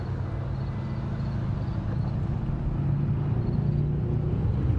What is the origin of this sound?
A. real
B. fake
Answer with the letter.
A